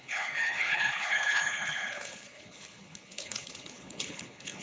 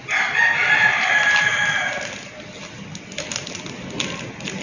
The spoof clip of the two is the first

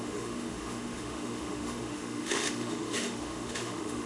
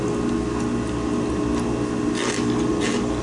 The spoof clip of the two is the first